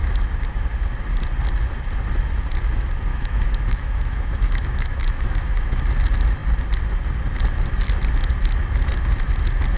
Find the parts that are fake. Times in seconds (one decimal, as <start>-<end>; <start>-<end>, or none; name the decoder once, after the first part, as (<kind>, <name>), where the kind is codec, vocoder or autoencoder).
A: 3.1-5.8 (autoencoder, DAC-VAE)